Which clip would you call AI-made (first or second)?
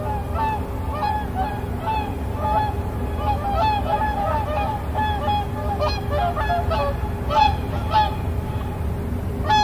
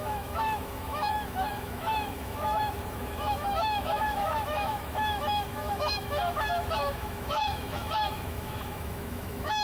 second